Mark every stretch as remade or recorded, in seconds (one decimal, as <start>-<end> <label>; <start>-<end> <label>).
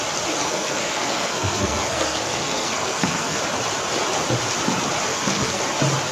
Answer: 0.0-0.4 recorded; 0.4-3.4 remade; 3.4-5.1 recorded; 5.1-5.6 remade; 5.6-6.1 recorded